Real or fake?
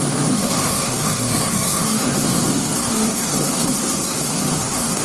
fake